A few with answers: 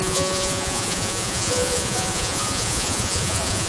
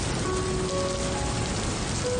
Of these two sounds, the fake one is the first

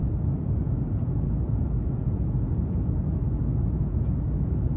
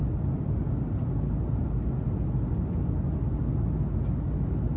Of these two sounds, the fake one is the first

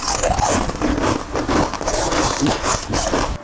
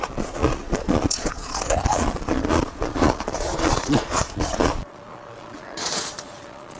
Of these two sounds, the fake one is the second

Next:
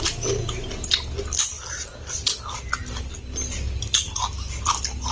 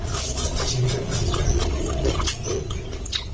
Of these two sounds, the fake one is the second